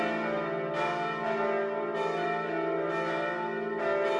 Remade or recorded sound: recorded